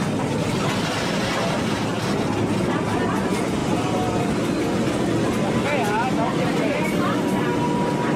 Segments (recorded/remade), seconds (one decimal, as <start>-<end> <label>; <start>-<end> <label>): 0.0-8.2 recorded